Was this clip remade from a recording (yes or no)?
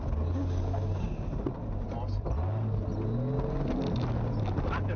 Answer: no